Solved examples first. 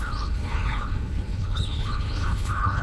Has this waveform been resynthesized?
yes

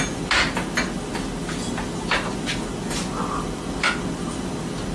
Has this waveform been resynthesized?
no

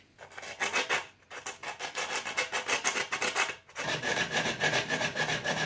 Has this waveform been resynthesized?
no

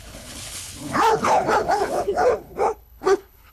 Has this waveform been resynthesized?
yes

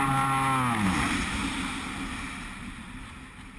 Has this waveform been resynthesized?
no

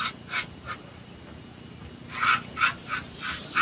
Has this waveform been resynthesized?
no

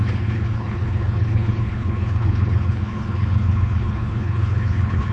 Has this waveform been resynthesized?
yes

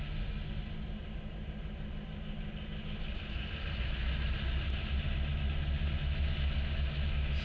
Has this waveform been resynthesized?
no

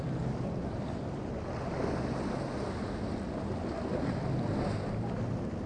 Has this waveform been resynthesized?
no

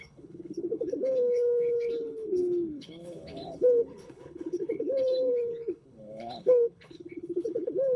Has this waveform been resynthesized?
yes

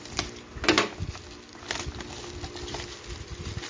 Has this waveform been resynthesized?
no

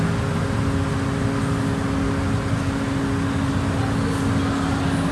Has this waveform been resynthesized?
no